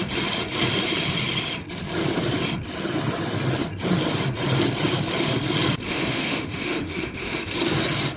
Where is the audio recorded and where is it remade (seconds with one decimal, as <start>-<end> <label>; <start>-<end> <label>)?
0.0-5.9 recorded; 5.9-7.5 remade; 7.5-8.2 recorded